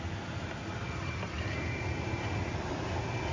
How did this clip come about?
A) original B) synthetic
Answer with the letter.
A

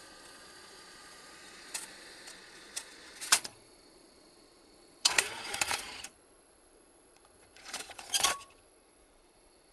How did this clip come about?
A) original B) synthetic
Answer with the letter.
B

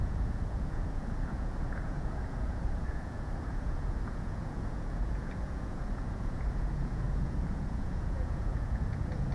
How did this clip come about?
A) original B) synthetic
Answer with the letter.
B